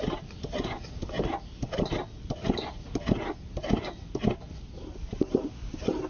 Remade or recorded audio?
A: recorded